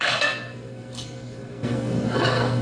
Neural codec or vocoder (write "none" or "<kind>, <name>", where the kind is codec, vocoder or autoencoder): codec, SNAC